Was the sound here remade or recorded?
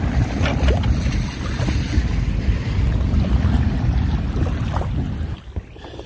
recorded